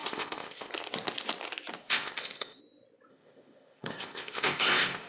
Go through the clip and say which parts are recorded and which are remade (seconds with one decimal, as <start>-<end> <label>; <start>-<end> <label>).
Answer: 0.0-0.7 remade; 0.7-1.8 recorded; 1.8-2.6 remade; 2.6-3.1 recorded; 3.1-5.1 remade